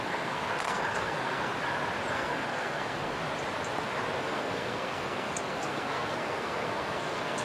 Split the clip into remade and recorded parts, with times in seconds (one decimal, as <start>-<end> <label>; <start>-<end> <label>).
0.0-1.5 remade; 1.5-2.1 recorded; 2.1-3.2 remade; 3.2-4.2 recorded; 4.2-7.4 remade